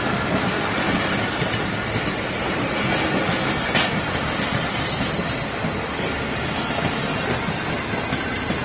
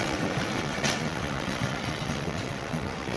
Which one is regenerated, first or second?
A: second